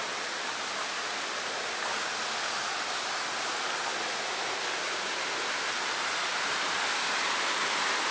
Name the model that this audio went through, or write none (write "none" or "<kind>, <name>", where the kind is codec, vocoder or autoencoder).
none